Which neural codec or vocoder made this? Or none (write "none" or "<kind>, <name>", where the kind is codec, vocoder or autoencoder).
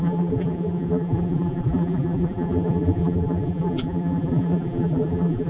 vocoder, BigVGAN v2